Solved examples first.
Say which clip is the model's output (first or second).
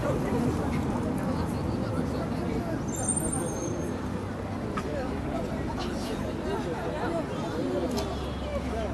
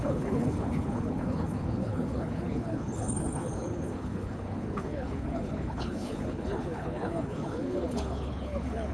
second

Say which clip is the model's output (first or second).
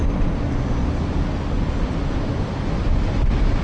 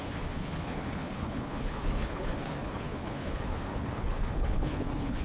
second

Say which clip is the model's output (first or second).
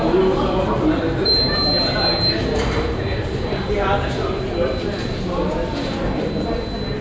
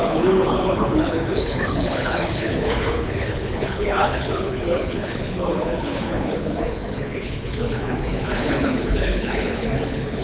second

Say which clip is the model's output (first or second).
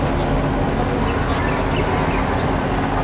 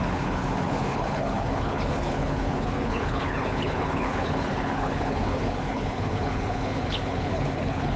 second